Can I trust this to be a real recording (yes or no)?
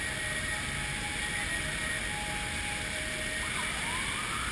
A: yes